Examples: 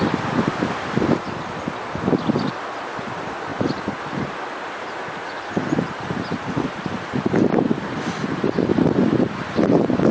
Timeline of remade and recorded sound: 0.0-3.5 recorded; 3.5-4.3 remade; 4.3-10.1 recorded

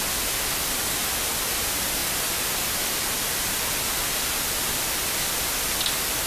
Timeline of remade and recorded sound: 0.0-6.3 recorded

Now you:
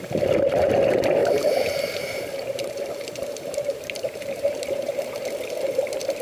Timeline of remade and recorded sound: 0.0-1.2 recorded; 1.2-4.9 remade; 4.9-6.2 recorded

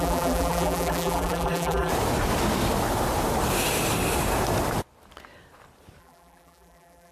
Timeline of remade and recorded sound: 0.0-1.9 remade; 1.9-6.0 recorded; 6.0-7.1 remade

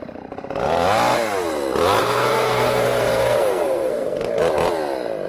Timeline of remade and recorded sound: 0.0-2.0 recorded; 2.0-4.4 remade; 4.4-5.3 recorded

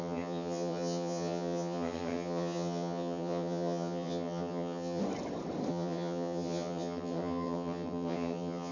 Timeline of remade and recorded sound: 0.0-5.0 remade; 5.0-5.7 recorded; 5.7-8.7 remade